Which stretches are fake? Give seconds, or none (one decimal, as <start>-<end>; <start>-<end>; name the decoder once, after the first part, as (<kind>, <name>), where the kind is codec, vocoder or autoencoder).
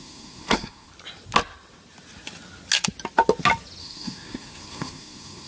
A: 0.0-0.9 (codec, SNAC); 3.8-5.5